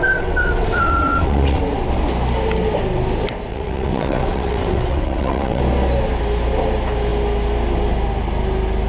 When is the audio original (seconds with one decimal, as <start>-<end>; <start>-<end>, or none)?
1.6-3.5; 5.6-8.9